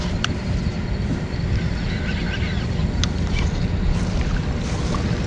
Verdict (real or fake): real